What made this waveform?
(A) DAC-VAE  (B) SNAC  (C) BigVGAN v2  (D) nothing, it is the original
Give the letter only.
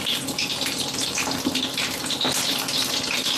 D